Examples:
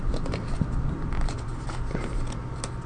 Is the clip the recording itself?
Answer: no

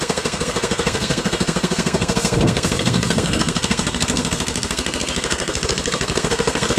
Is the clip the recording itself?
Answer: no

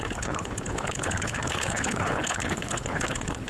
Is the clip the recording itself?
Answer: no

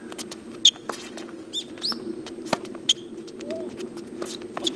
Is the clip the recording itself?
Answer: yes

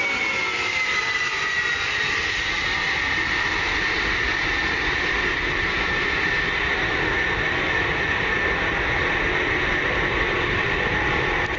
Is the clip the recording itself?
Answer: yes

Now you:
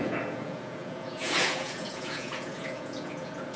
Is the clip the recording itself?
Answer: no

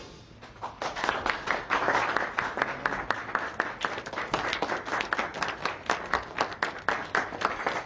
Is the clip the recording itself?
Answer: yes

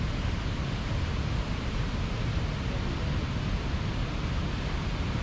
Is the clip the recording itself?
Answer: yes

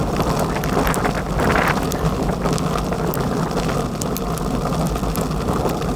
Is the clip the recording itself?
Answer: yes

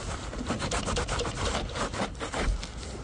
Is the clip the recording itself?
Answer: yes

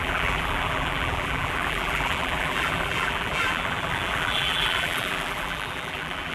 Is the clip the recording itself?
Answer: no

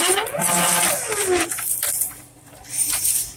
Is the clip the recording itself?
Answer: no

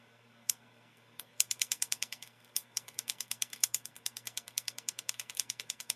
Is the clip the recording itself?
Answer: no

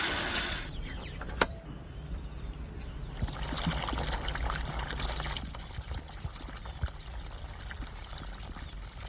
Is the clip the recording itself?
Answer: yes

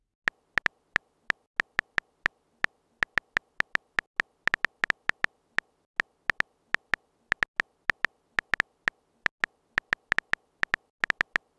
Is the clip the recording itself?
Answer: yes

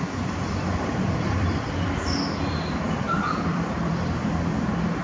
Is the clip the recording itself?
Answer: no